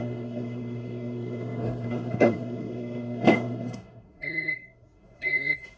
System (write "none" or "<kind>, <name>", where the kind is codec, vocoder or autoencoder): codec, SNAC